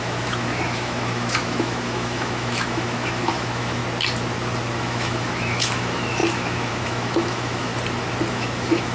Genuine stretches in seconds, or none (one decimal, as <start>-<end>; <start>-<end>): 3.8-4.8; 7.7-8.3